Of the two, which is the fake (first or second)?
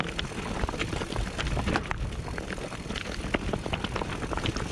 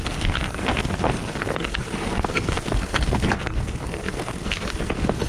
second